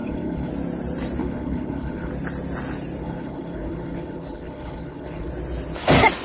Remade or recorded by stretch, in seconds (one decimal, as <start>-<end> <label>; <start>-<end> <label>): 0.0-0.5 remade; 0.5-1.2 recorded; 1.2-2.1 remade; 2.1-3.0 recorded; 3.0-5.3 remade; 5.3-6.2 recorded